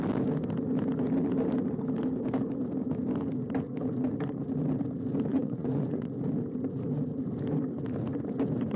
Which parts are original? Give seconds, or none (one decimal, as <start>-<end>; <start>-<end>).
0.0-5.3; 6.1-8.8